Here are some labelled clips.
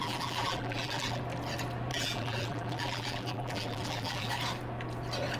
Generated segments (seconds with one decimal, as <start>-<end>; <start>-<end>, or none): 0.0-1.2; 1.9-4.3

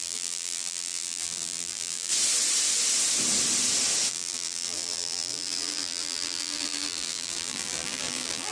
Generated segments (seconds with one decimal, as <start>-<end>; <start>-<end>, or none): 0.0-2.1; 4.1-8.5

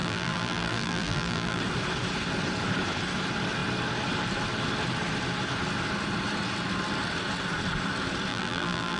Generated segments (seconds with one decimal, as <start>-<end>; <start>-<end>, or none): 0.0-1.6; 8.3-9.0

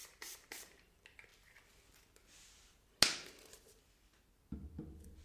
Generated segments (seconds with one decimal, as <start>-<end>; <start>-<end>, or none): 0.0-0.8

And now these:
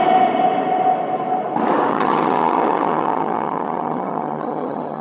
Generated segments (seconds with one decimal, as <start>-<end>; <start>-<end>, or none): 1.9-5.0

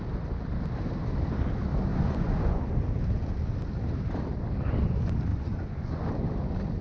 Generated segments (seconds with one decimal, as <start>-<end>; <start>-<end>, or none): 1.9-2.6; 5.3-6.1

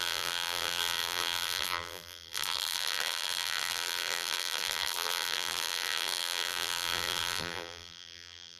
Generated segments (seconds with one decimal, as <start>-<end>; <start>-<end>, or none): 0.0-8.6